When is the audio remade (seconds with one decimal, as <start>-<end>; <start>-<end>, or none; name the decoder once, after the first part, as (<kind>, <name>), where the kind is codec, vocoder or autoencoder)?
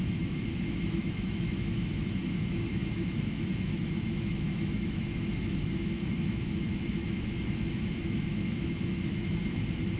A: 0.0-10.0 (autoencoder, DAC-VAE)